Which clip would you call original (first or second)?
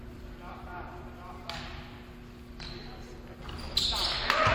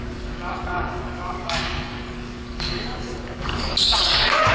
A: first